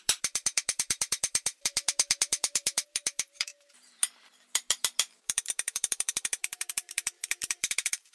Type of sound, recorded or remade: remade